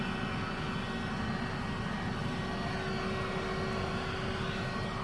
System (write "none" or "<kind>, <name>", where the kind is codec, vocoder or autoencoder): none